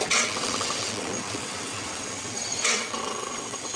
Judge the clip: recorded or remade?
remade